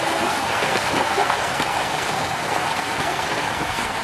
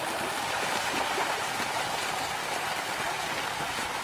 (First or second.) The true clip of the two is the second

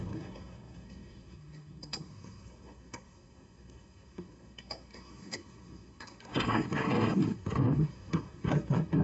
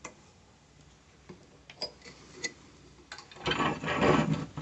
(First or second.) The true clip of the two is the second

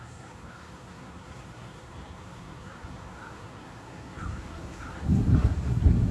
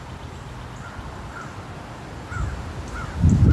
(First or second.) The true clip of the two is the second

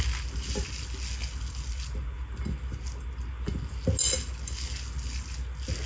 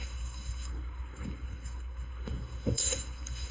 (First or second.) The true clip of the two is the first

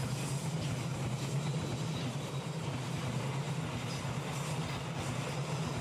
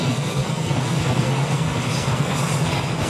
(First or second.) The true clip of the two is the first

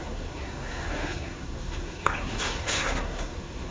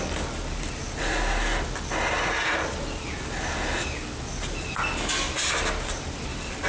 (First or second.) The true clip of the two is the second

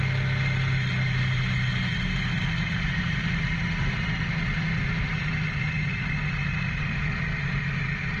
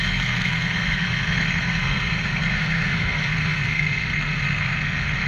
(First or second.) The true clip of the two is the first